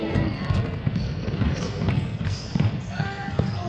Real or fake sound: fake